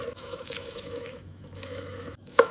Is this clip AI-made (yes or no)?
yes